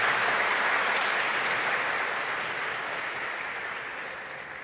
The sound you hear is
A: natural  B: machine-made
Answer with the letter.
A